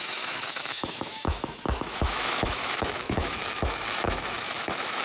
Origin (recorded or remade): remade